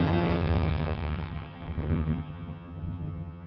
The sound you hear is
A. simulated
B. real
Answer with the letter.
A